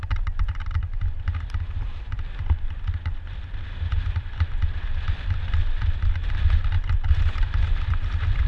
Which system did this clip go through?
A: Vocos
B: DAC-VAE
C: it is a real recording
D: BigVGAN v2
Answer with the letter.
D